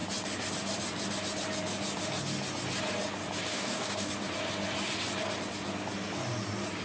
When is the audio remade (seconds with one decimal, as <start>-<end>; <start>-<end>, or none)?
3.5-4.1

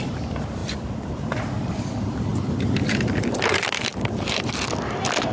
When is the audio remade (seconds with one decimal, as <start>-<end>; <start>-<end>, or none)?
none

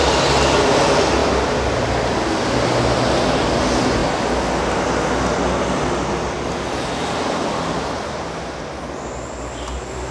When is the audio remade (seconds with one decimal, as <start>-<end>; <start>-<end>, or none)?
none

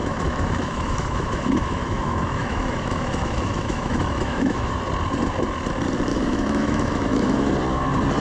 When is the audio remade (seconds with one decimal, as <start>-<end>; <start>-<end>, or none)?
0.0-4.7; 6.1-7.5